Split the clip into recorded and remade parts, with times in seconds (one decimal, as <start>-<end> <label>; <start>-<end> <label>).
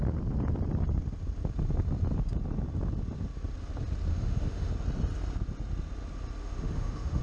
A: 0.0-4.1 recorded; 4.1-4.7 remade; 4.7-6.4 recorded; 6.4-7.2 remade